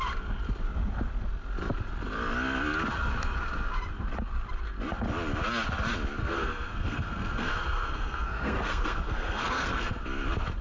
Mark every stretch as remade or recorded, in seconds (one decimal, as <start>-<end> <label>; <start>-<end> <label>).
0.0-6.2 recorded; 6.2-10.0 remade; 10.0-10.6 recorded

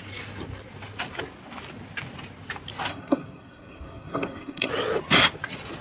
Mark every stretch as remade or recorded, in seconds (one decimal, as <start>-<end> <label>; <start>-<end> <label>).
0.0-2.9 recorded; 2.9-4.7 remade; 4.7-5.8 recorded

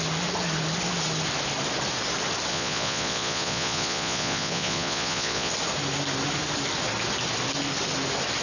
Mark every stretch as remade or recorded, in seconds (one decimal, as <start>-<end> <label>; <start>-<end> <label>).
0.0-2.5 recorded; 2.5-5.5 remade; 5.5-8.4 recorded

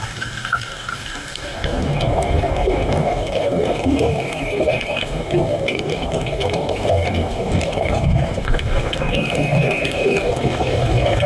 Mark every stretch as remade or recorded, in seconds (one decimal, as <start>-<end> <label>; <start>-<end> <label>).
0.0-11.3 remade

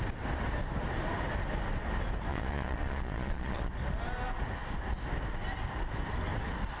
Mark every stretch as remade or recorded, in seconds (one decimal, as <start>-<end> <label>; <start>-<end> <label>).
0.0-2.3 recorded; 2.3-3.7 remade; 3.7-6.8 recorded

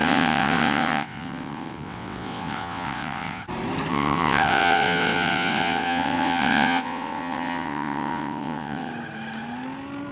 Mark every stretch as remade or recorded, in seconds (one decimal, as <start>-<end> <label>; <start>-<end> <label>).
0.0-3.4 remade; 3.4-3.9 recorded; 3.9-8.9 remade; 8.9-10.1 recorded